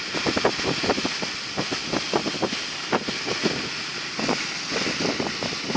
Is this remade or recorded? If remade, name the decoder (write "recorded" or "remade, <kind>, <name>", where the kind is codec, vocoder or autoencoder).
recorded